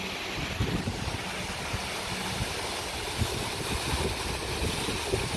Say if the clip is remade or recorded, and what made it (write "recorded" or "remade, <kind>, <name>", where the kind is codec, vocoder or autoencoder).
recorded